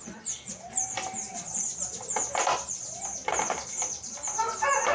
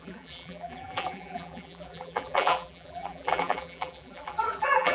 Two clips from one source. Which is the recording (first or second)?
first